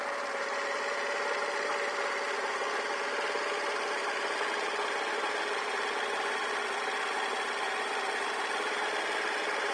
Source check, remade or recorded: recorded